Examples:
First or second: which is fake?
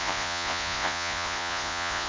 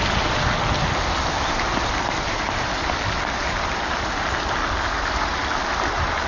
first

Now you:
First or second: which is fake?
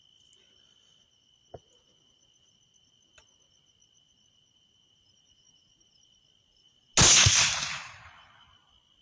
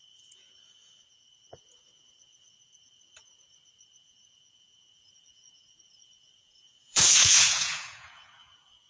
second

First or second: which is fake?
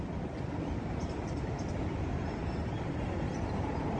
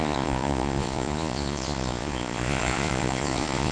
second